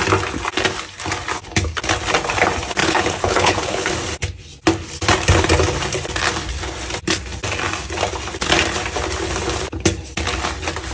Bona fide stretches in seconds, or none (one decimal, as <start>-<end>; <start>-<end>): 0.0-2.8; 3.9-10.9